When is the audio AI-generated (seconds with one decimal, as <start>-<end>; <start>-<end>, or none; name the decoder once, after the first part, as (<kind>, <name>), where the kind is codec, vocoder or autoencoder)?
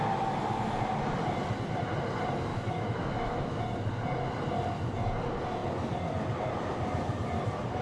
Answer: 2.5-3.6 (autoencoder, DAC-VAE)